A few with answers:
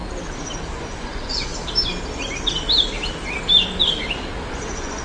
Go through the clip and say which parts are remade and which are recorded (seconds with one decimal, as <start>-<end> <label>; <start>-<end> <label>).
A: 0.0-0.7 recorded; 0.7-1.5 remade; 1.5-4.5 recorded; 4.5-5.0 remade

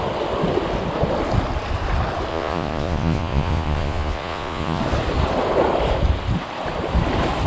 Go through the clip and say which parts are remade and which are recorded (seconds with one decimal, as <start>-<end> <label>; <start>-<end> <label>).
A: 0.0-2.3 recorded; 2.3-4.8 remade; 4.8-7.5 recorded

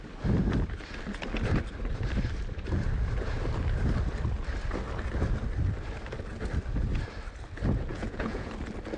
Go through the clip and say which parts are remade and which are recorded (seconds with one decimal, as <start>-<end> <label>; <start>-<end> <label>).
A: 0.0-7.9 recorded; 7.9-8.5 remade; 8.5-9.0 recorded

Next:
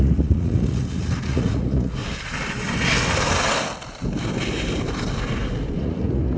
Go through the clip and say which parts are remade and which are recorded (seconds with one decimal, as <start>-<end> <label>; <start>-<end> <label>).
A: 0.0-2.0 remade; 2.0-5.8 recorded; 5.8-6.4 remade

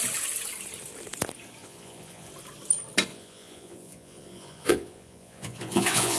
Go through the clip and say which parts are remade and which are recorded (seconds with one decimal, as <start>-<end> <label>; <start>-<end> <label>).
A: 0.0-1.6 recorded; 1.6-2.3 remade; 2.3-3.1 recorded; 3.1-6.2 remade